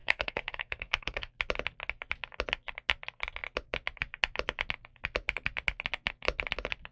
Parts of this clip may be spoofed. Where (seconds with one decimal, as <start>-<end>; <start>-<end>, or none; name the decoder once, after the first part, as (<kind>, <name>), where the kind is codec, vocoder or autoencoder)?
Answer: 0.0-1.3 (codec, SNAC)